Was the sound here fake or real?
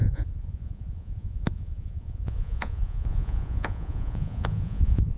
fake